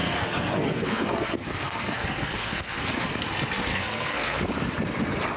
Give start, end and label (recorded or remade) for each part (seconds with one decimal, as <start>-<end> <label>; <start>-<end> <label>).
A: 0.0-3.2 remade; 3.2-3.7 recorded; 3.7-4.4 remade; 4.4-5.4 recorded